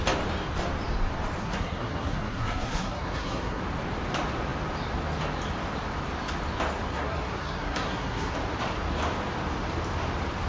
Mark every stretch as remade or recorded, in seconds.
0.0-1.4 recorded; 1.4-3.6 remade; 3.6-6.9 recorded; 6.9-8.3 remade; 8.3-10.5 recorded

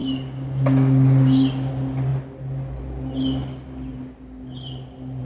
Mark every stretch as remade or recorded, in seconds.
0.0-5.2 recorded

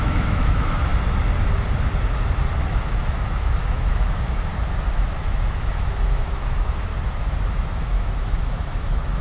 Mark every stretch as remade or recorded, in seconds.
0.0-0.9 remade; 0.9-2.8 recorded; 2.8-4.5 remade; 4.5-5.2 recorded; 5.2-6.9 remade; 6.9-7.5 recorded; 7.5-9.2 remade

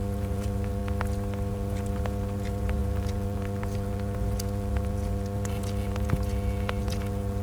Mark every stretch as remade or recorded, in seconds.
0.0-0.8 remade; 0.8-1.5 recorded; 1.5-7.4 remade

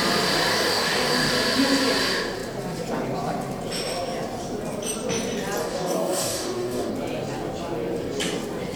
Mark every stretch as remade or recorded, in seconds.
0.0-0.5 recorded; 0.5-1.3 remade; 1.3-5.6 recorded; 5.6-6.9 remade; 6.9-8.8 recorded

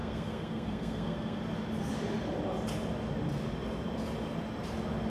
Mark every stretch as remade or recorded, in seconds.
0.0-1.4 remade; 1.4-5.1 recorded